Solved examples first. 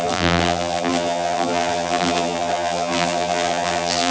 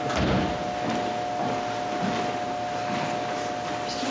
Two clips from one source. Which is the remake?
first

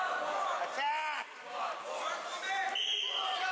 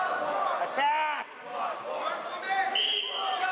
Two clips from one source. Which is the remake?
first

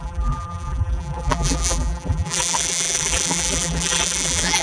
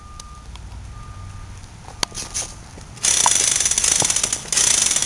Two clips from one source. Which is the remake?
first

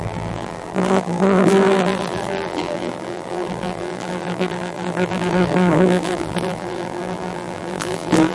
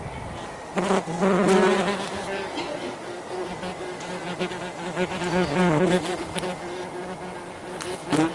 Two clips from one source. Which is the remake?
first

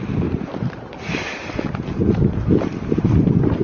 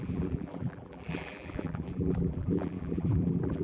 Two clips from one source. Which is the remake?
second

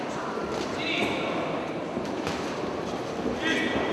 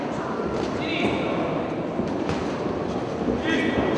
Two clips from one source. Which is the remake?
first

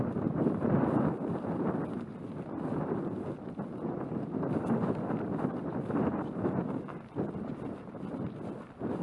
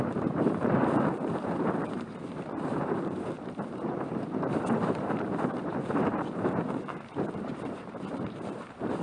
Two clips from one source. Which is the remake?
second